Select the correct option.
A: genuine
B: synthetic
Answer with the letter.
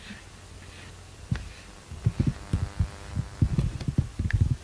A